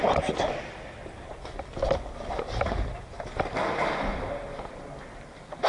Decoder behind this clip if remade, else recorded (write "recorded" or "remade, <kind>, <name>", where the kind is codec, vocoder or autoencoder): remade, vocoder, BigVGAN v2